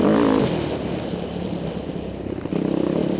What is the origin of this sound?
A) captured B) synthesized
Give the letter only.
A